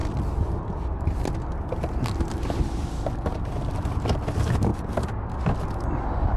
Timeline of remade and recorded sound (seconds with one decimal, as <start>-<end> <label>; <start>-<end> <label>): 0.0-0.6 remade; 0.6-6.4 recorded